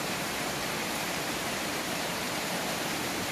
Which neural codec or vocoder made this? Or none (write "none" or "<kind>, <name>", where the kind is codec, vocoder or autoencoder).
vocoder, BigVGAN v2